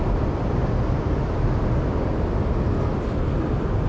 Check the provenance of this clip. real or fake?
real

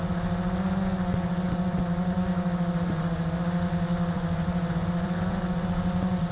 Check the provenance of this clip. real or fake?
fake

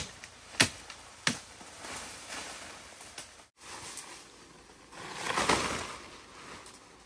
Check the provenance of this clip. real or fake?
real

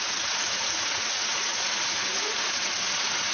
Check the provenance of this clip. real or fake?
fake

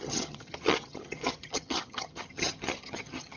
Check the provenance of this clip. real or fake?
fake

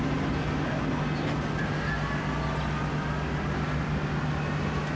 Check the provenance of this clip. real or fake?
real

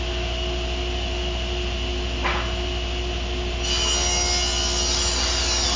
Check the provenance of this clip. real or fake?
real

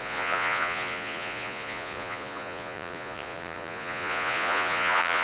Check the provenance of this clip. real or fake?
fake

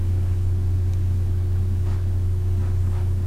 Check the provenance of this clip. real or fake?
fake